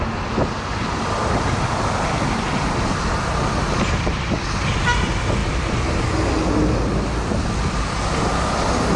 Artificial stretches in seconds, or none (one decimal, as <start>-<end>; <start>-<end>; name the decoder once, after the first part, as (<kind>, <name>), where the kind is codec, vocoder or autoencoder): none